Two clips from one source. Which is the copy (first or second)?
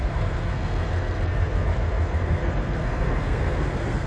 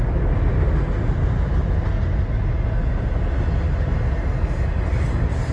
first